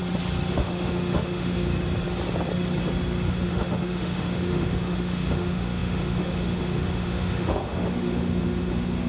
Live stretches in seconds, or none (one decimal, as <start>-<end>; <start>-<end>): 0.0-0.5; 1.7-3.3